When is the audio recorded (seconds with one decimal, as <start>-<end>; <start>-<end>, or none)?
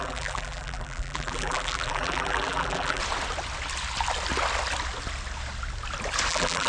3.0-6.3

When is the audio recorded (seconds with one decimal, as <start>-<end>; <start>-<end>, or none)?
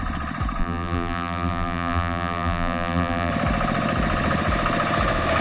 0.0-0.6; 3.3-5.4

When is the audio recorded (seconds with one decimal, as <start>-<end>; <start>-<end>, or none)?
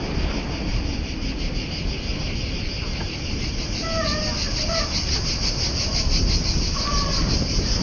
0.0-7.8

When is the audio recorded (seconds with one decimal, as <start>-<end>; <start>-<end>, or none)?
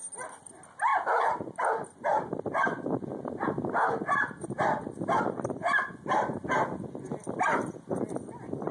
0.0-8.7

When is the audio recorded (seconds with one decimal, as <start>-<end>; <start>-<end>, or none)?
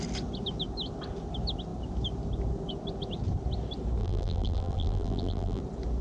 0.0-4.0; 5.6-6.0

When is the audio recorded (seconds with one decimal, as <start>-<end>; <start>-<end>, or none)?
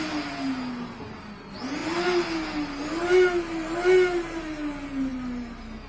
0.0-5.1